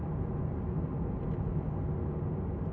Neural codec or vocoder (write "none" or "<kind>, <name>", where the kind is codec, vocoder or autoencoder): none